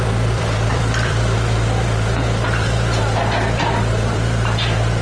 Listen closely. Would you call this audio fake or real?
fake